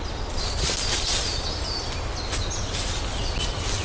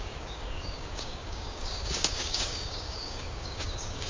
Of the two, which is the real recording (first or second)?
first